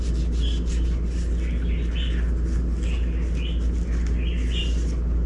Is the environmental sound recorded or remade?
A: recorded